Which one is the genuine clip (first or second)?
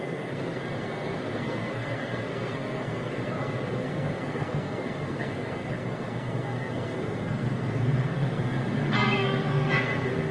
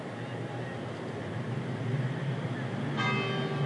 second